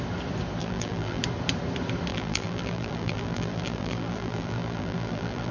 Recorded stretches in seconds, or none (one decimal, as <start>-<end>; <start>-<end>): 0.0-0.6; 1.2-2.1